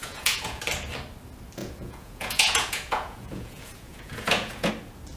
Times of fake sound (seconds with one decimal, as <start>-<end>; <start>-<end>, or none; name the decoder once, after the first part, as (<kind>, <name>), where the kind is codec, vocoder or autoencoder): 0.0-0.6 (vocoder, Vocos); 1.6-4.7